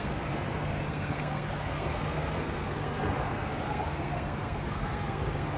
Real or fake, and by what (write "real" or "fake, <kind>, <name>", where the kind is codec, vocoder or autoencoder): fake, codec, SNAC